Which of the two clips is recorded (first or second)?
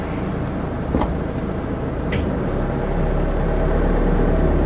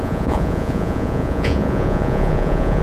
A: first